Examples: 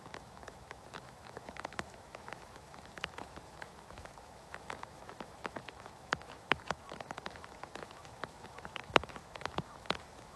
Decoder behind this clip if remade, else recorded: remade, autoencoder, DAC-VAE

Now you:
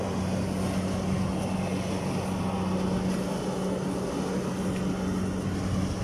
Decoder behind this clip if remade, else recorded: recorded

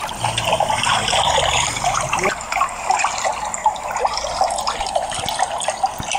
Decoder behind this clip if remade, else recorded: recorded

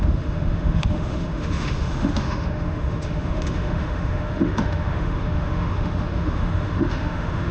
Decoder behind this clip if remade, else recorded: remade, autoencoder, DAC-VAE